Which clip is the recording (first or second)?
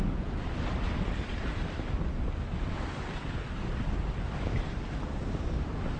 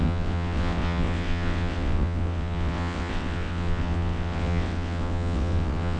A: first